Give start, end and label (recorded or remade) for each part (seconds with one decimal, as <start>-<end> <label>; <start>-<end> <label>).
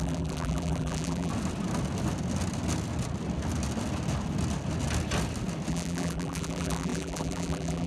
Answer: 0.0-1.3 remade; 1.3-5.7 recorded; 5.7-7.9 remade